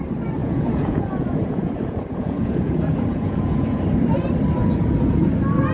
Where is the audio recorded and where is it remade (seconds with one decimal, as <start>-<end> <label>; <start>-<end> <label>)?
0.0-0.4 recorded; 0.4-3.8 remade; 3.8-4.6 recorded; 4.6-5.3 remade; 5.3-5.7 recorded